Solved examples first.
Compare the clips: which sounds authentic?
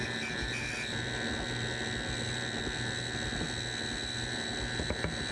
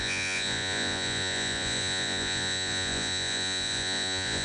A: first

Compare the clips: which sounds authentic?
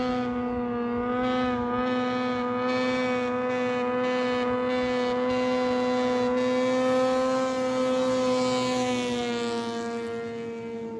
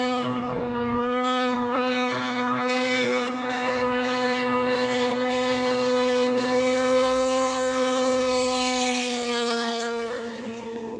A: first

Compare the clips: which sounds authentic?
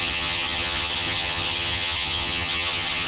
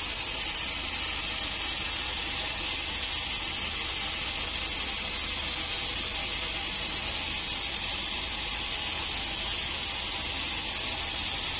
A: second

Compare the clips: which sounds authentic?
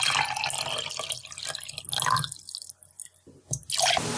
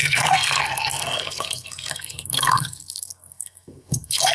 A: first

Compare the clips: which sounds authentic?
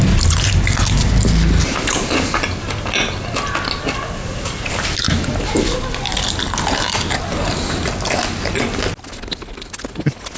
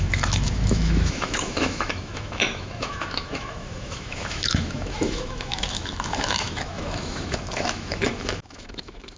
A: first